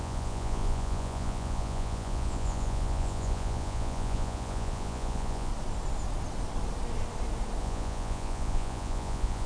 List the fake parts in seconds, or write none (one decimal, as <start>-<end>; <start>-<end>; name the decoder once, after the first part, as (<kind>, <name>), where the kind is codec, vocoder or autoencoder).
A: 0.0-5.5 (vocoder, Vocos); 7.6-9.5